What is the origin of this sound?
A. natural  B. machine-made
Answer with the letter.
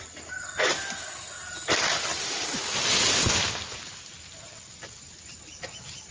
A